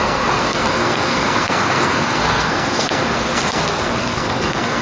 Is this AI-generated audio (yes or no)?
yes